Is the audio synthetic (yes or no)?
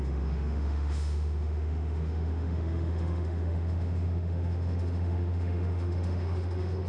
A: yes